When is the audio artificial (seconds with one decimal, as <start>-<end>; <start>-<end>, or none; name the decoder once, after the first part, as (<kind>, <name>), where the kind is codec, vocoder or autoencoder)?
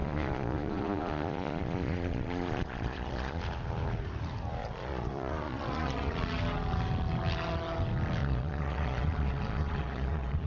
0.0-3.4 (vocoder, Vocos); 4.6-6.1; 8.2-10.5